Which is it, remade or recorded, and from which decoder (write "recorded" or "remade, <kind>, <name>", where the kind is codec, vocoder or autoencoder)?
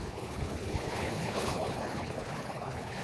remade, codec, HILCodec